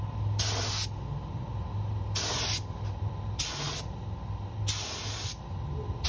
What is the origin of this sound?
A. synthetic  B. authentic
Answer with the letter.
B